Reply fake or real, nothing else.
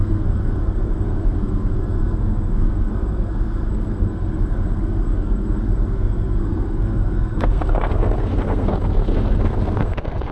fake